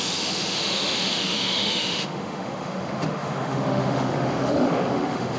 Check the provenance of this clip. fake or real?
fake